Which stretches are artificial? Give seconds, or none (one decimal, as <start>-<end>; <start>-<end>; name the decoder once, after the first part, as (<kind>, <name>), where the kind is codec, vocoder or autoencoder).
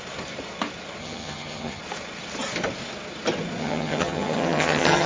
1.0-1.8 (vocoder, HiFi-GAN); 3.6-5.1